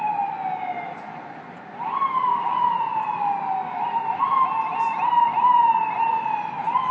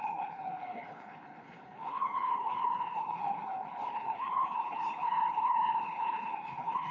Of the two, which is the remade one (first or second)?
second